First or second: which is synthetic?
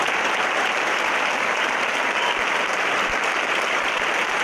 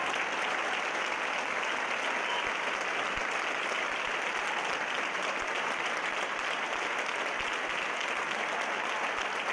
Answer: first